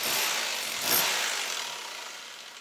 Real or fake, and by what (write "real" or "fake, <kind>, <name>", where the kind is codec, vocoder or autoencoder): real